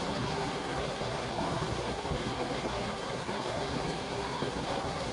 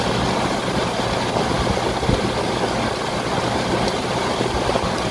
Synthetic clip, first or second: first